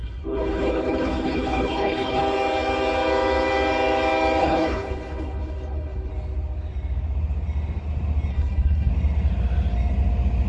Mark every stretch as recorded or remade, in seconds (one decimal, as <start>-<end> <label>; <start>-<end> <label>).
0.0-2.2 remade; 2.2-4.4 recorded; 4.4-6.1 remade; 6.1-8.3 recorded; 8.3-8.9 remade; 8.9-10.5 recorded